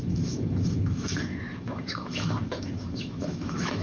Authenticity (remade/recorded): remade